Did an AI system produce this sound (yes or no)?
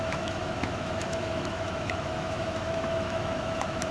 yes